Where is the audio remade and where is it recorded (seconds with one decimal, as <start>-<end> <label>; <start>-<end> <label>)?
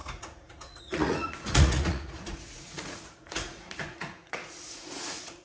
0.0-5.4 remade